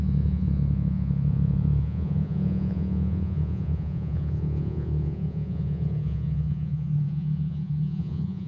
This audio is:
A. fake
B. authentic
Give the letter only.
A